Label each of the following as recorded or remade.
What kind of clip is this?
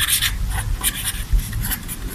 recorded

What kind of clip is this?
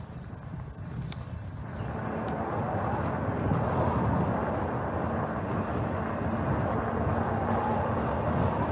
recorded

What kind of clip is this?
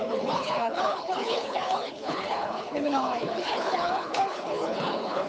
remade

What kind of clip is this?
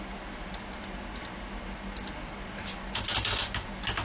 recorded